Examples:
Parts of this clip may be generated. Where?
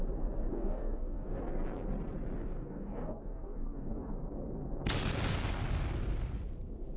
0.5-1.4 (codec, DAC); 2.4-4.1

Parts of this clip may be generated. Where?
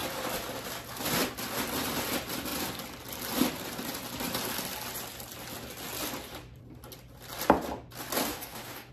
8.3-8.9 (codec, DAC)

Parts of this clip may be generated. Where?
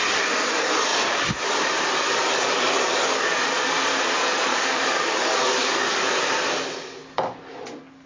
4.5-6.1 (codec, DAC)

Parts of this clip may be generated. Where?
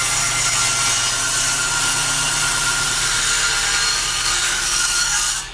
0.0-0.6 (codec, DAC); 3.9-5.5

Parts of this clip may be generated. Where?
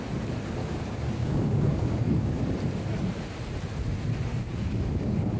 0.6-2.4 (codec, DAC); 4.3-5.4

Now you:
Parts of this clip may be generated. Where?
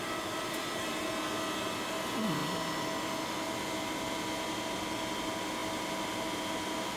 none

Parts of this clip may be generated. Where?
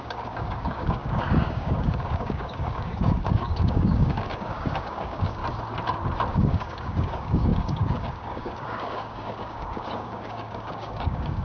0.0-5.4 (codec, DAC); 6.3-11.4